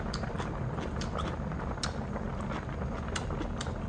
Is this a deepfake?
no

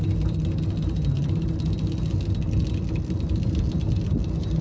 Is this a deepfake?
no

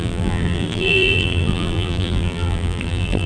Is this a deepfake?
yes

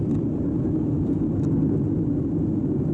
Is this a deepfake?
no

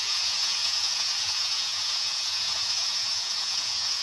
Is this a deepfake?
yes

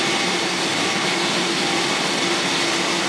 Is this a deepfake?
no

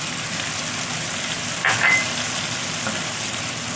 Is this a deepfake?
no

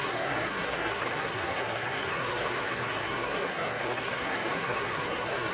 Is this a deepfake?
yes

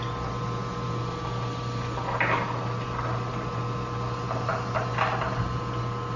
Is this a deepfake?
no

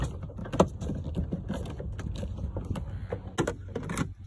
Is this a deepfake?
no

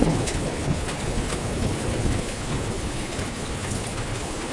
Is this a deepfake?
yes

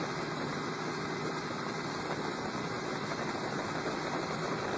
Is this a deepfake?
no